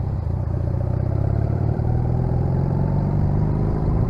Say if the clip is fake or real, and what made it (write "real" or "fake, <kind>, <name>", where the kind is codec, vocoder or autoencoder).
fake, vocoder, BigVGAN v2